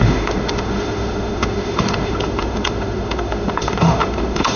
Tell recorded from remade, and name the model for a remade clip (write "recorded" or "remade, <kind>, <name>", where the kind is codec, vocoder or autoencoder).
remade, autoencoder, DAC-VAE